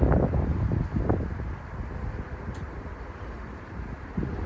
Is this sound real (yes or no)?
yes